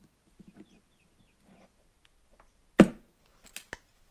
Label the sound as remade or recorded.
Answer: recorded